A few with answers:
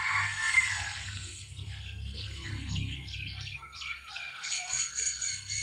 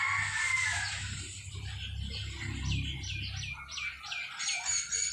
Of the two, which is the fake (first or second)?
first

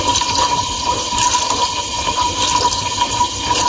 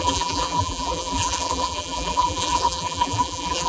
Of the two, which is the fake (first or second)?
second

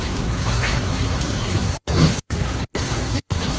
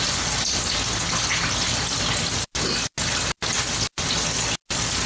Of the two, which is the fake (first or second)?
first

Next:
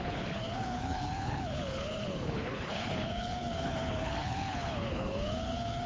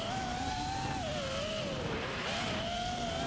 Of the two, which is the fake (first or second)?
first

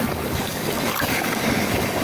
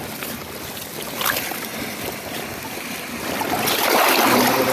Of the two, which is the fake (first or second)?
first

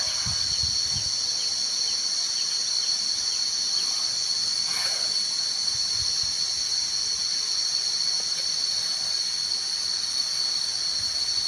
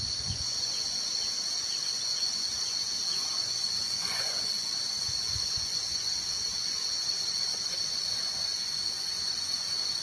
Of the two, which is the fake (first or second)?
second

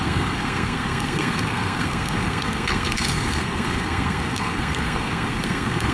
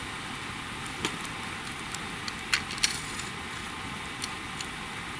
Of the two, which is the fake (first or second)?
first